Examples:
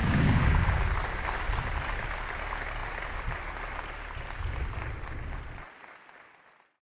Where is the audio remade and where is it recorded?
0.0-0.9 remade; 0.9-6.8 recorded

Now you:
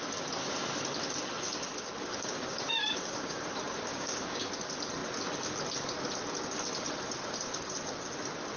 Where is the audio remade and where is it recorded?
0.0-2.1 recorded; 2.1-3.4 remade; 3.4-3.9 recorded; 3.9-4.5 remade; 4.5-8.6 recorded

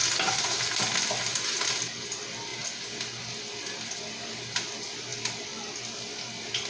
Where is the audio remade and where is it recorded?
0.0-6.7 recorded

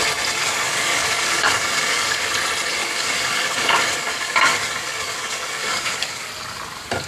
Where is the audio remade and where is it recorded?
0.0-0.4 recorded; 0.4-2.3 remade; 2.3-2.8 recorded; 2.8-6.3 remade; 6.3-7.1 recorded

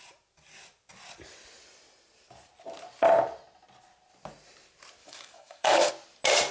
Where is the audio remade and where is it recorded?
0.0-5.0 recorded; 5.0-5.9 remade; 5.9-6.5 recorded